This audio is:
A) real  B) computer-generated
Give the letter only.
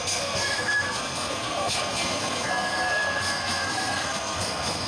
B